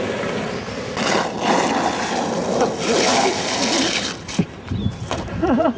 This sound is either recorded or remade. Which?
recorded